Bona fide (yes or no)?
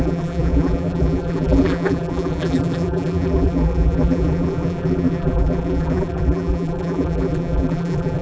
no